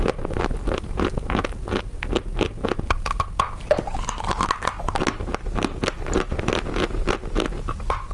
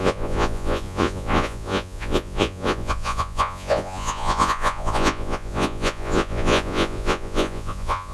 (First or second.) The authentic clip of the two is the first